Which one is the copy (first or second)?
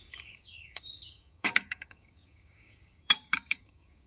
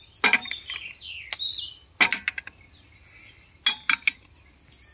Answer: first